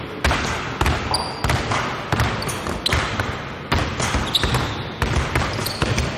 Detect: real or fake real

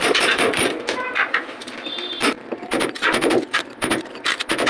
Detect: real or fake fake